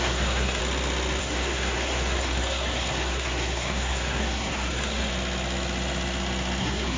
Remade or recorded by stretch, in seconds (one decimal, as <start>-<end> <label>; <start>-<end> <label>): 0.0-0.6 remade; 0.6-1.2 recorded; 1.2-5.1 remade; 5.1-6.6 recorded; 6.6-7.0 remade